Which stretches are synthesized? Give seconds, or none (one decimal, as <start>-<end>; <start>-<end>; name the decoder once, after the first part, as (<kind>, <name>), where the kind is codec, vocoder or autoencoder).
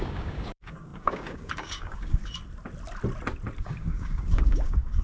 0.0-2.2 (codec, DAC); 3.6-5.0